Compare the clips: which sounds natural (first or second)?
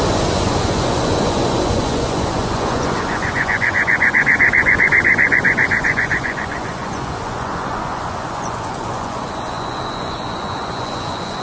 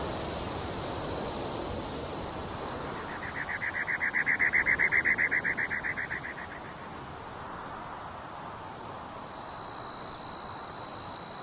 second